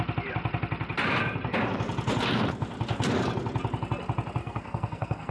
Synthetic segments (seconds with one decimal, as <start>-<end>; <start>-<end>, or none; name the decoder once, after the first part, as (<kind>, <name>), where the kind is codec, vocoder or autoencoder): 4.4-5.3 (codec, SNAC)